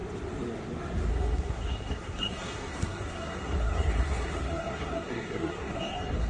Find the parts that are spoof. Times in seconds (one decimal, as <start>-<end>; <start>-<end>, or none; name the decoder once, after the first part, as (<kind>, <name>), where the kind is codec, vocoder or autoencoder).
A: 1.1-6.3 (codec, SNAC)